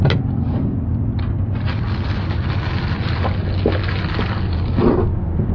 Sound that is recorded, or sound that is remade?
recorded